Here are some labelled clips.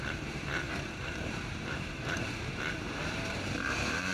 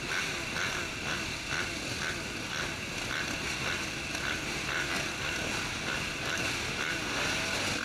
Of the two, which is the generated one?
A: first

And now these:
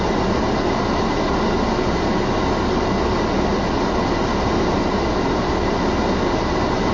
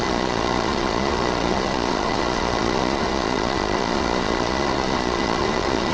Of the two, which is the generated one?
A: second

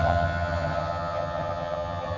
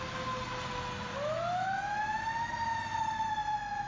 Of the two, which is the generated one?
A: first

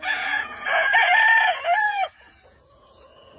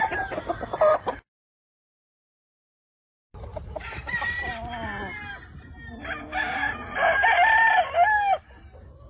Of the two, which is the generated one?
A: first